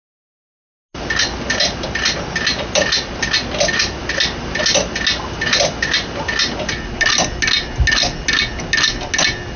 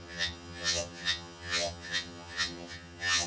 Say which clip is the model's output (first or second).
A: second